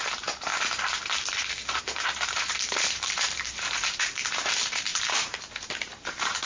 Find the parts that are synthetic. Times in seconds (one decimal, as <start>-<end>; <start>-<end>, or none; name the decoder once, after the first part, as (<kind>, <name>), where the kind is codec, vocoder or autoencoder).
0.0-0.5 (vocoder, BigVGAN v2); 1.8-6.5